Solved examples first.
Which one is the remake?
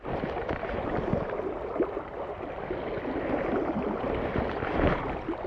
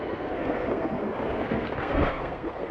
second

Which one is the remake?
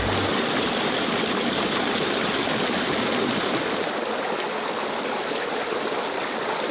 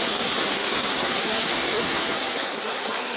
second